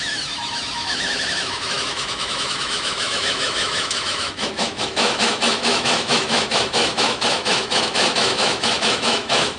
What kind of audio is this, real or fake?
fake